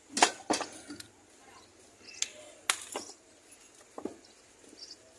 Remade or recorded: recorded